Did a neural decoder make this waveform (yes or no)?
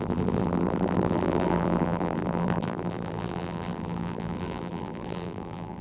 yes